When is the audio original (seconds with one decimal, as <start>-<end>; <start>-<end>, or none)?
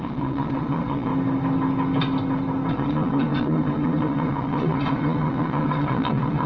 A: 1.1-2.7